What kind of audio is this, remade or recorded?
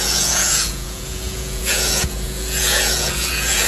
remade